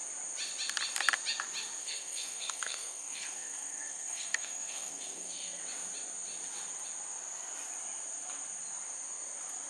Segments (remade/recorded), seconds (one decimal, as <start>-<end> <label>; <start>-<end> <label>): 0.0-1.8 recorded; 1.8-5.6 remade; 5.6-9.7 recorded